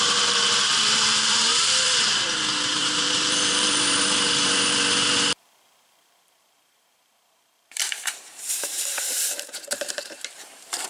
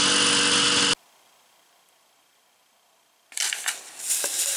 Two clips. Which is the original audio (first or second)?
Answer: second